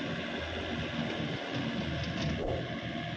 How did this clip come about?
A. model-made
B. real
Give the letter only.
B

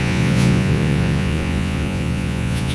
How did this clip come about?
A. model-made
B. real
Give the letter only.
A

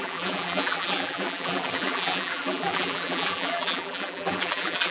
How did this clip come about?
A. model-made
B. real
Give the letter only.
A